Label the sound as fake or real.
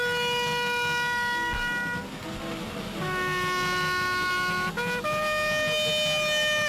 real